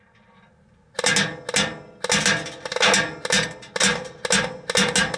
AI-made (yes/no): no